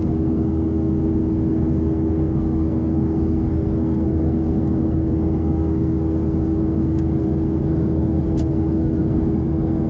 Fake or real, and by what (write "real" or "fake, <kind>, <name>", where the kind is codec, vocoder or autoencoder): fake, codec, SNAC